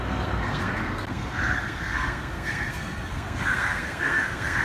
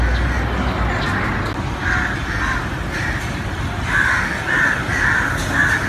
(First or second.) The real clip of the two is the second